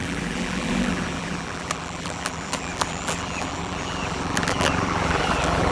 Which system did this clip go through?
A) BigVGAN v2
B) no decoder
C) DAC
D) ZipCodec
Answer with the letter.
A